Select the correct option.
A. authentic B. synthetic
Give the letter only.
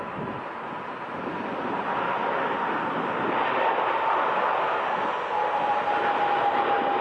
A